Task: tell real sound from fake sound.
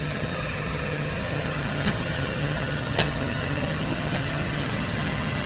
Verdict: fake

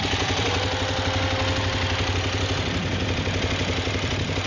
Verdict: real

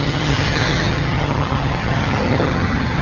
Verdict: fake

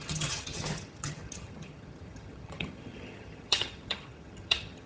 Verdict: fake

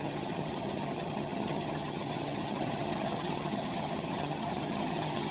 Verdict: fake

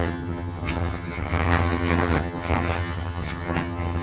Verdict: fake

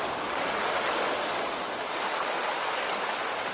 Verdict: real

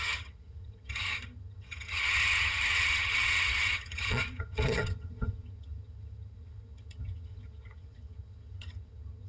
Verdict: fake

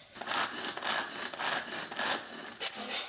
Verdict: real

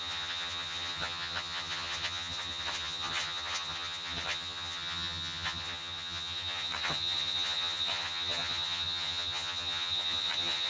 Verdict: fake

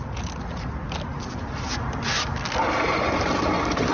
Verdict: real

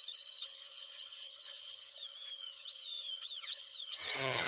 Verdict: fake